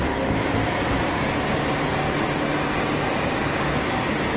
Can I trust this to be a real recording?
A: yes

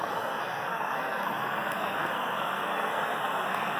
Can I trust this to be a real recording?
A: no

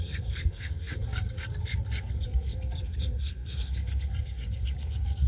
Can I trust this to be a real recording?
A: no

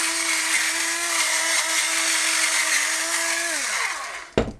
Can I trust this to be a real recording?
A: yes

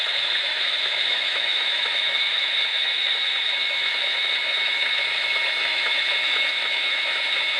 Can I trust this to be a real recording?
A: no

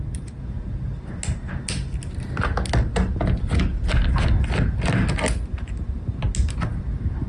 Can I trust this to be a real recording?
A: yes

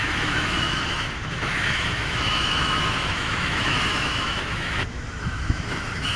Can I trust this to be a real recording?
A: no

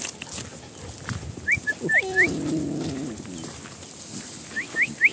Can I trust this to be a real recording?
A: yes